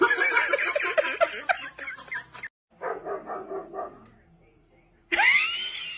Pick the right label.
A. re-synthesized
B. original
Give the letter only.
B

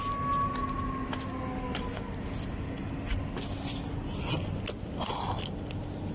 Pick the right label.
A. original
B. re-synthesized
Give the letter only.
A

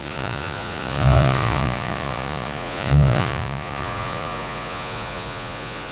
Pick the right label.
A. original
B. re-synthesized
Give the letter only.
B